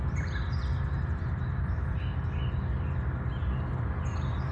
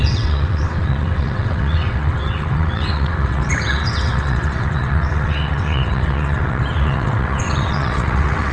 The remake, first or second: second